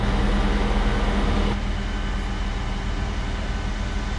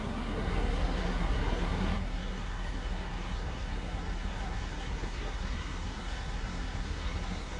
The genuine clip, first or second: first